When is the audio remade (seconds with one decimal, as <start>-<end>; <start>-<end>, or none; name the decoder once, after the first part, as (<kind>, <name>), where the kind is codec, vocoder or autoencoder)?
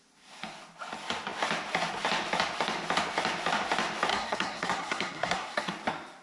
4.1-5.7 (codec, SNAC)